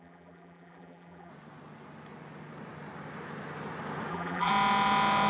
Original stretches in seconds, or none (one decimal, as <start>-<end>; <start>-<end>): 1.3-4.1; 4.5-5.3